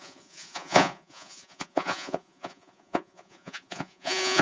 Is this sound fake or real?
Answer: fake